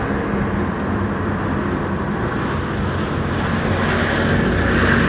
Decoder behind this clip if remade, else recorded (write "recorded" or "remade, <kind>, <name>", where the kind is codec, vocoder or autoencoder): recorded